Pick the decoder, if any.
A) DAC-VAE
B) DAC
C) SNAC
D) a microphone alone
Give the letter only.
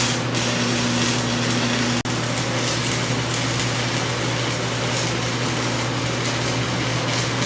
D